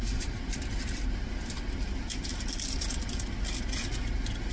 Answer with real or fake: real